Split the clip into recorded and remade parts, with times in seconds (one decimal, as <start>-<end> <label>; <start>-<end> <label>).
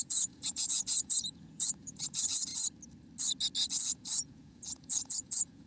0.0-2.5 remade; 2.5-3.7 recorded; 3.7-5.7 remade